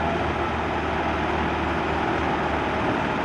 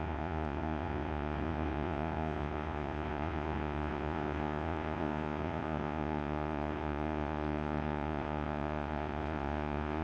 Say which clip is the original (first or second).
first